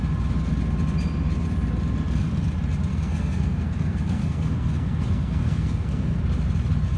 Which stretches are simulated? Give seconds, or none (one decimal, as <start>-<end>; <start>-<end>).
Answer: 2.9-6.2